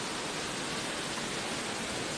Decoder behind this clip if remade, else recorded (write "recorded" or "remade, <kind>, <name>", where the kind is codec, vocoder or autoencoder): recorded